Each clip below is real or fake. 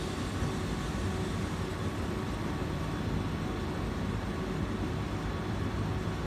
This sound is real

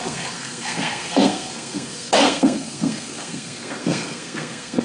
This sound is fake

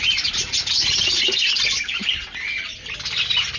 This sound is real